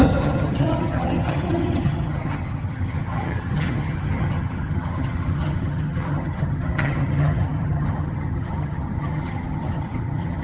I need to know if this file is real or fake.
fake